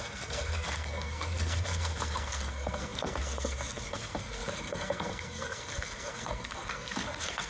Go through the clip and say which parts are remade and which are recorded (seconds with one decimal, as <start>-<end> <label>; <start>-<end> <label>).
0.0-7.5 remade